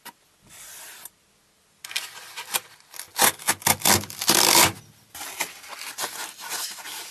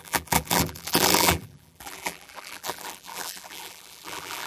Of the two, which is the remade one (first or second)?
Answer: second